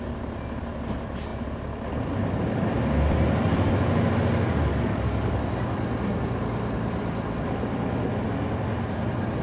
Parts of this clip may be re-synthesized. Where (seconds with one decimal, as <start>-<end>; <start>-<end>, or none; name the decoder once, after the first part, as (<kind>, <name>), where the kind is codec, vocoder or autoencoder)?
4.7-5.4 (codec, DAC)